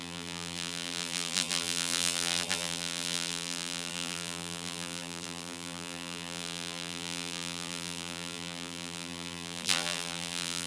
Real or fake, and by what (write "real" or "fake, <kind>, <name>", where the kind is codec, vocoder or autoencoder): fake, vocoder, BigVGAN v2